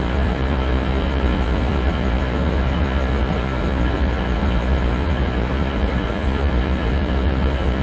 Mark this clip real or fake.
fake